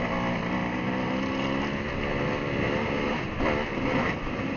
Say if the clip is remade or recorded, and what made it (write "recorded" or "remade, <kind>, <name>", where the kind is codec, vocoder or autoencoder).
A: recorded